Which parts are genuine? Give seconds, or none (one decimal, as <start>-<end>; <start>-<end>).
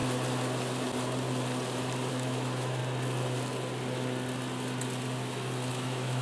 0.0-2.1; 2.8-5.7